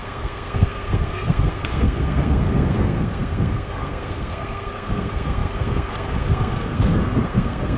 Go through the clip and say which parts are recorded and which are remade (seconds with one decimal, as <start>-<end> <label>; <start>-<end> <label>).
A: 0.0-7.8 remade